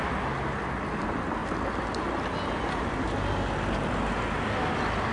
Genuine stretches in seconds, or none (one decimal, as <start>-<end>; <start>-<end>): 0.0-5.1